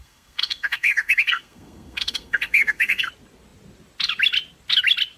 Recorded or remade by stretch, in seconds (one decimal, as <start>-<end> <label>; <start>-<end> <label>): 0.0-3.1 remade; 3.1-5.2 recorded